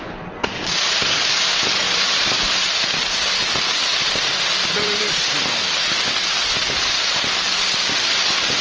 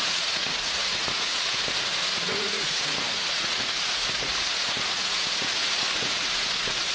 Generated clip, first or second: second